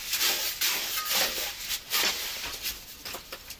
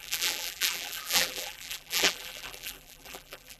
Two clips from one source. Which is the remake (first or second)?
second